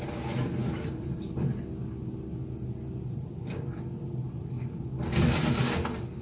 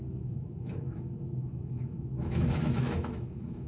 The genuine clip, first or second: first